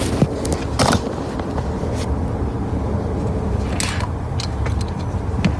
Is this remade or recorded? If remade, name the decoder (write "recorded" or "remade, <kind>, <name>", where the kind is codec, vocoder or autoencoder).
recorded